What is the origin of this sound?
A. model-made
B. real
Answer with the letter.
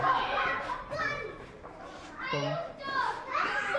A